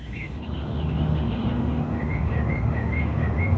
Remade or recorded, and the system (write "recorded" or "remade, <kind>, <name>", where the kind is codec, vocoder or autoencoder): remade, autoencoder, DAC-VAE